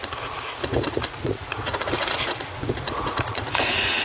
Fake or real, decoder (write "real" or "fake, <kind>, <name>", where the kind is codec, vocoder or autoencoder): fake, vocoder, Vocos